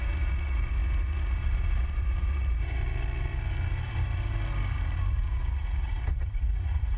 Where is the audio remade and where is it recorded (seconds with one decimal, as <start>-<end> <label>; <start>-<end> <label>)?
0.0-2.8 remade; 2.8-5.1 recorded; 5.1-7.0 remade